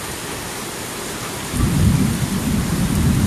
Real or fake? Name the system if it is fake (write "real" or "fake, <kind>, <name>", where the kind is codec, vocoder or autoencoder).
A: fake, vocoder, BigVGAN v2